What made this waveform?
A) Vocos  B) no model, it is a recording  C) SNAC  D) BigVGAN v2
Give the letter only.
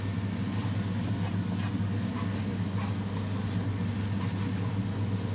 B